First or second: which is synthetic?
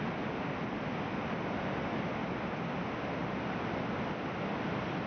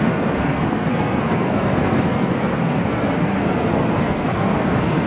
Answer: second